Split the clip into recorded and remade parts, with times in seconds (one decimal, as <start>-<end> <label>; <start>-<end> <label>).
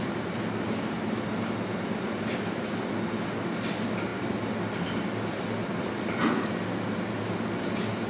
0.0-8.1 recorded